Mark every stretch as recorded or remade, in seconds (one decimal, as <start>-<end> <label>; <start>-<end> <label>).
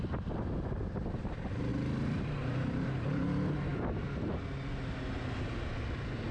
0.0-1.7 recorded; 1.7-3.0 remade; 3.0-6.3 recorded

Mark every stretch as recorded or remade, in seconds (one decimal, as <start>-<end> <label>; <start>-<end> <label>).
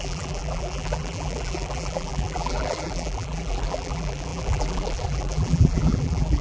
0.0-6.4 remade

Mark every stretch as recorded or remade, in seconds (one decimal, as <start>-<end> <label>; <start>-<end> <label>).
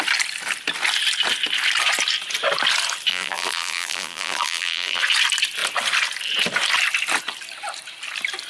0.0-3.1 recorded; 3.1-5.0 remade; 5.0-8.5 recorded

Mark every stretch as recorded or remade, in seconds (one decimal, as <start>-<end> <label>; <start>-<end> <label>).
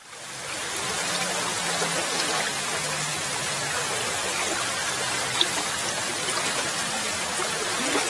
0.0-4.8 recorded; 4.8-6.7 remade; 6.7-8.1 recorded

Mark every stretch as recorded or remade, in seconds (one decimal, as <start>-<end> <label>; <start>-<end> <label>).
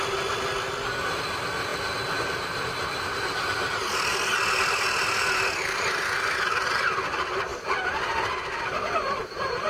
0.0-9.7 recorded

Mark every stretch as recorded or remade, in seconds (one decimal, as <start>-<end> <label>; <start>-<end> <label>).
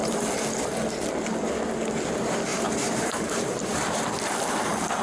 0.0-2.5 recorded; 2.5-4.0 remade; 4.0-5.0 recorded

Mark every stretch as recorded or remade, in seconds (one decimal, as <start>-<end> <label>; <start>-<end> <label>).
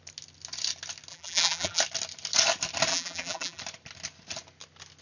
0.0-1.1 recorded; 1.1-1.8 remade; 1.8-2.9 recorded; 2.9-3.6 remade; 3.6-5.0 recorded